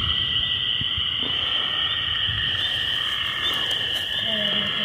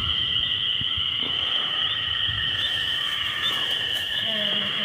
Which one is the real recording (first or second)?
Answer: first